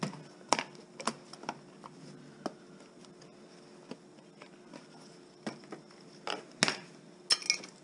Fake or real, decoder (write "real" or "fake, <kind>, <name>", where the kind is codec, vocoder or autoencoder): real